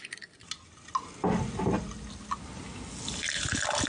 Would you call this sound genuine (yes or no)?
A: yes